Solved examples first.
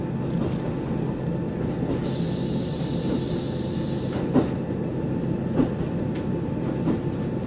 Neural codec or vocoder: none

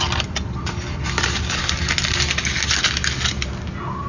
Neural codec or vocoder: none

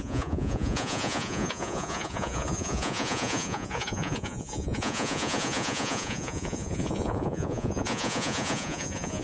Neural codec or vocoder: vocoder, Vocos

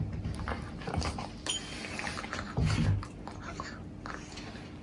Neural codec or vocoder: none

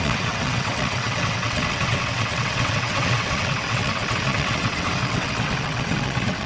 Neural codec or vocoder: vocoder, WaveNeXt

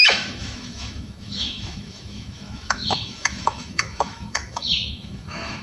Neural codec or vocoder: autoencoder, DAC-VAE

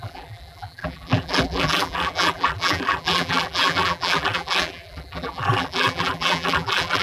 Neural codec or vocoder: vocoder, BigVGAN v2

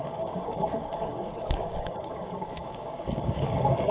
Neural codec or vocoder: codec, DAC